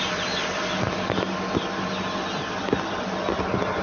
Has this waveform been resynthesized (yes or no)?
no